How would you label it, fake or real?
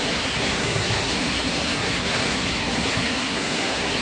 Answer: fake